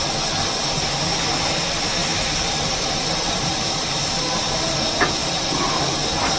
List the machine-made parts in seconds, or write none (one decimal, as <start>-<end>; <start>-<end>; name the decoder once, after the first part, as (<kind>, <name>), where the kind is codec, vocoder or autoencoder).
2.0-4.0 (vocoder, BigVGAN v2); 5.2-5.7